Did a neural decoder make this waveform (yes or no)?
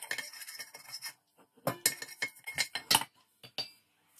no